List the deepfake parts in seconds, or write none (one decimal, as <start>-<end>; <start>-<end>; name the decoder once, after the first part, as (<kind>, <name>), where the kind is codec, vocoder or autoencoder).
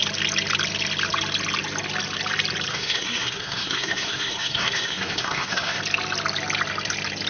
2.7-5.8 (codec, SNAC)